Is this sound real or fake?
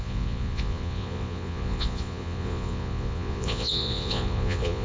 fake